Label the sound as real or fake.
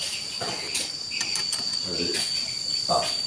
real